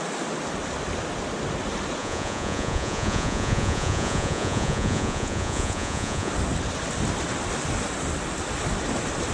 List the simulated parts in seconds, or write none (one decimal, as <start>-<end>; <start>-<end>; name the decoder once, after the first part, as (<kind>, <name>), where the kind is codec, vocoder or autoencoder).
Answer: 2.0-6.3 (vocoder, Vocos)